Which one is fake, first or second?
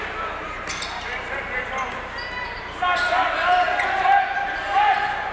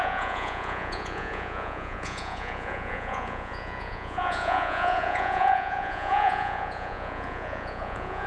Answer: second